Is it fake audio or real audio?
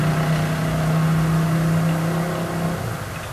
real